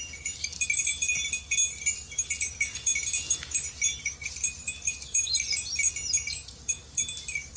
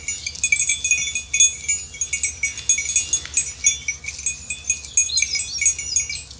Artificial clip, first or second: first